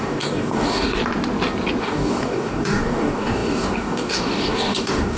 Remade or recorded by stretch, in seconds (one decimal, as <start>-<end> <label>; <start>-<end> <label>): 0.0-1.0 remade; 1.0-1.8 recorded; 1.8-5.2 remade